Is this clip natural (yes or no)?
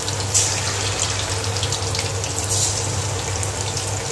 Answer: yes